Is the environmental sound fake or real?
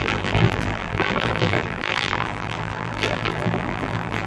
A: fake